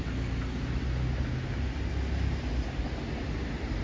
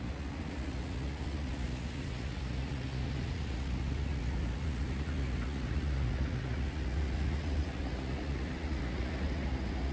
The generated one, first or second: second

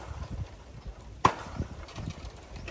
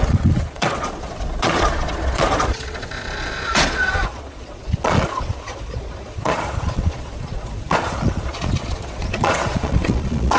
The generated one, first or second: second